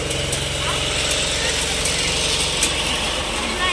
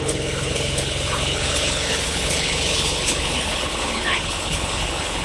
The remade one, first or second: second